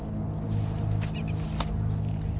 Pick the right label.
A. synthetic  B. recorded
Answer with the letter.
B